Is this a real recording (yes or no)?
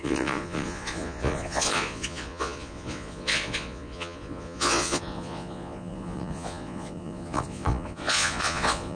no